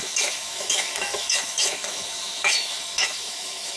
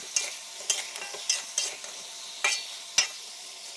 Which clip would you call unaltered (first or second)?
second